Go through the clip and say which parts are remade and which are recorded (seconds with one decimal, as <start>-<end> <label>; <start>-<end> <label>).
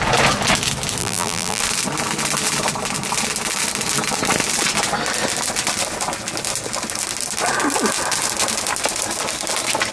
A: 0.0-1.0 recorded; 1.0-1.6 remade; 1.6-9.9 recorded